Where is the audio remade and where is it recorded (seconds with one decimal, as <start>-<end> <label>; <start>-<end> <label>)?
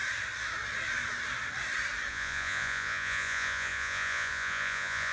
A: 0.0-2.1 recorded; 2.1-5.1 remade